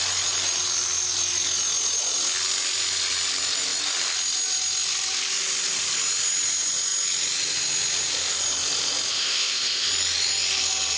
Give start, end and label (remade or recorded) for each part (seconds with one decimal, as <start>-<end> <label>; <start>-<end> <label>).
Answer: 0.0-9.1 recorded; 9.1-9.9 remade; 9.9-11.0 recorded